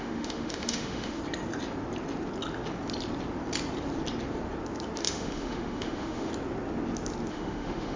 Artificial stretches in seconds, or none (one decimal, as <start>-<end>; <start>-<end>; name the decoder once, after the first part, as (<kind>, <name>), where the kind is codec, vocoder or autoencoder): 0.0-1.2 (autoencoder, DAC-VAE); 5.0-6.3; 7.3-8.0